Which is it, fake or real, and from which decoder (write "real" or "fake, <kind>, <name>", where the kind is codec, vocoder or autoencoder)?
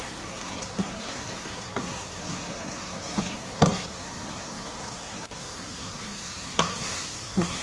fake, codec, SNAC